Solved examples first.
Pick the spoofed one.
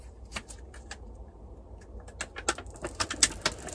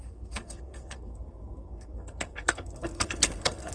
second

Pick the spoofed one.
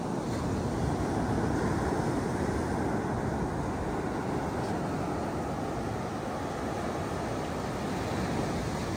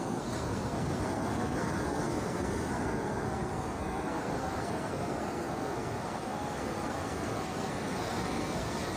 second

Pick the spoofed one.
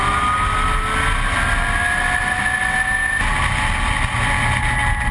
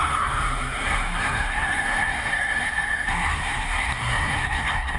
second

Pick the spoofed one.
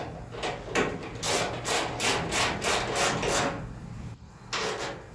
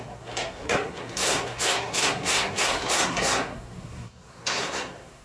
second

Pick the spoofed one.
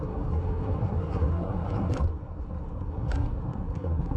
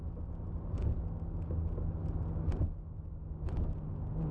first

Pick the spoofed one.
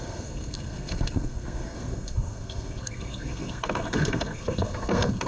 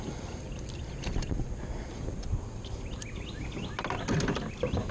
first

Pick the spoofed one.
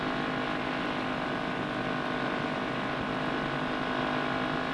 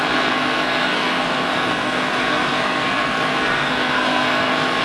second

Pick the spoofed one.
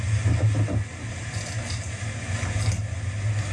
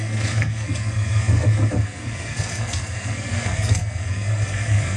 second